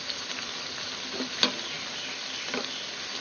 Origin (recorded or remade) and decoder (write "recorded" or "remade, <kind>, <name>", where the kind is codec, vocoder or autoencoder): recorded